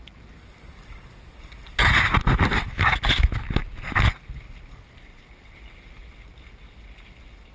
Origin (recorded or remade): recorded